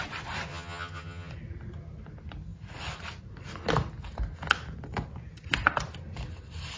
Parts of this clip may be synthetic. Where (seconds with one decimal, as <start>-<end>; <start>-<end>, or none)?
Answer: 0.5-1.3